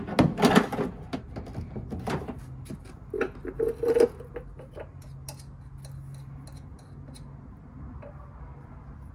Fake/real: real